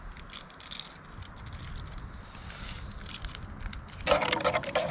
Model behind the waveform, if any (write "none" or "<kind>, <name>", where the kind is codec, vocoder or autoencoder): none